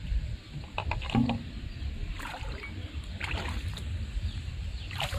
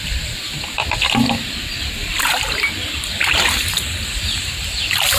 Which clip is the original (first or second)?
first